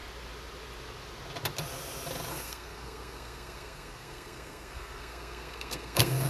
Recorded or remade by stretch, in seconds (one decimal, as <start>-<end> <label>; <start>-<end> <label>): 0.0-2.3 recorded; 2.3-6.3 remade